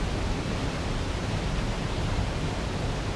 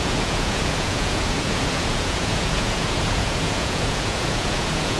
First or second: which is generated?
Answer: second